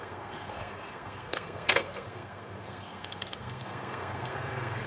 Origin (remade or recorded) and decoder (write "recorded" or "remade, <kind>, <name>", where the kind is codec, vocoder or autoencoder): remade, codec, SNAC